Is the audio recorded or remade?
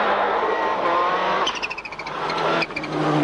recorded